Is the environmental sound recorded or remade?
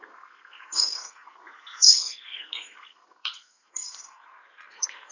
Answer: remade